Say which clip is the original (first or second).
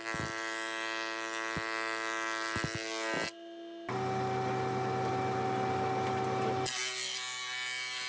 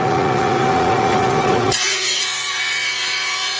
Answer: first